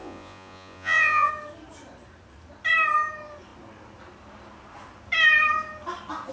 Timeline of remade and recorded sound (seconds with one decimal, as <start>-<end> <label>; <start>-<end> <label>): 0.0-1.3 remade; 1.3-6.3 recorded